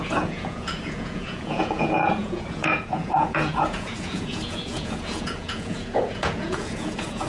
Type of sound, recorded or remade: remade